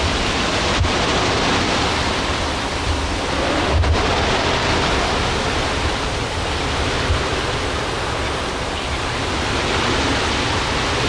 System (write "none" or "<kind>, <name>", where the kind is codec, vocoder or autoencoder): none